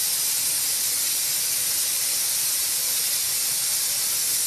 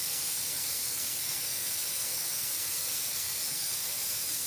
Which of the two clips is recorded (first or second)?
first